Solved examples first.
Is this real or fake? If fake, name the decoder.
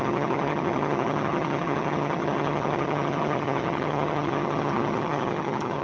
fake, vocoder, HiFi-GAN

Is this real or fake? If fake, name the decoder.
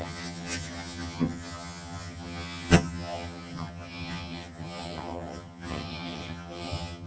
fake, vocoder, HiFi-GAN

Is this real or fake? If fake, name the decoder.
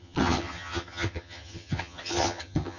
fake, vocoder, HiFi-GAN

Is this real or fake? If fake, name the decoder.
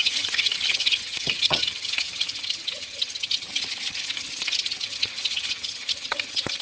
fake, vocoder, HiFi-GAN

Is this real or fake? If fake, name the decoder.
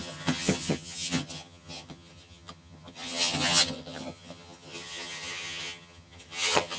fake, vocoder, HiFi-GAN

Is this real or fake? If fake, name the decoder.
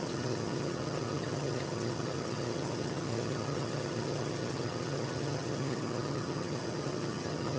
fake, vocoder, HiFi-GAN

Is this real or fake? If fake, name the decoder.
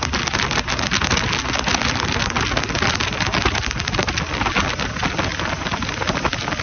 real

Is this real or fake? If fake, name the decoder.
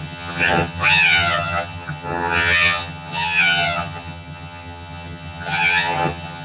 fake, vocoder, HiFi-GAN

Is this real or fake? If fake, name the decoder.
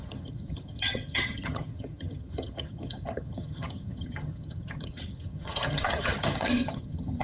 fake, vocoder, HiFi-GAN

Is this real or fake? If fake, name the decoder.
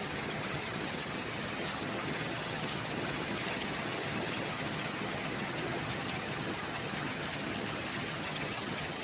fake, vocoder, HiFi-GAN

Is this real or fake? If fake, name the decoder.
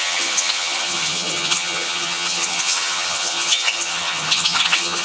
fake, vocoder, HiFi-GAN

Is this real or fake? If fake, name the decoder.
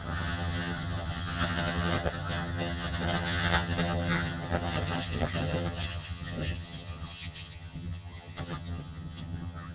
fake, vocoder, HiFi-GAN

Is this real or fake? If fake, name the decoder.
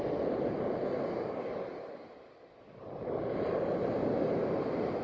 real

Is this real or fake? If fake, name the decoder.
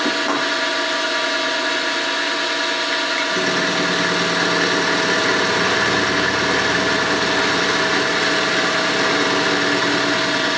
real